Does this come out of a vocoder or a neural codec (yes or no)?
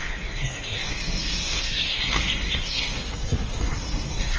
yes